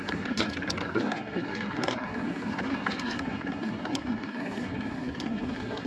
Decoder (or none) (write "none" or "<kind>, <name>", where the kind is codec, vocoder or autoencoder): codec, SNAC